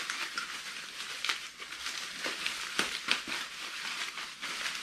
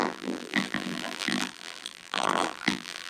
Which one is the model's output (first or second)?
second